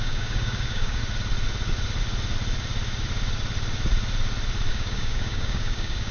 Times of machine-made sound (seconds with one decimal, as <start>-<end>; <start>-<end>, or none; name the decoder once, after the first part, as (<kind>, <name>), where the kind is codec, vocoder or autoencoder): 0.0-1.0 (codec, DAC); 4.7-6.1